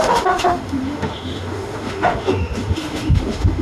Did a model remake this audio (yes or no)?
yes